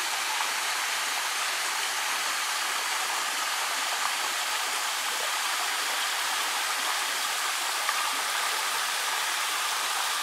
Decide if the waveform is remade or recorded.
remade